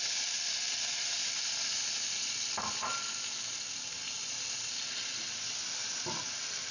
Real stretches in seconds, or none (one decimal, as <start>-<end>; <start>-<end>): 0.0-6.7